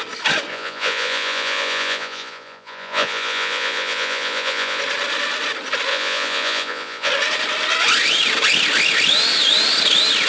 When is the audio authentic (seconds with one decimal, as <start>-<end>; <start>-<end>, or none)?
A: 0.0-0.5; 4.8-5.9; 7.1-10.3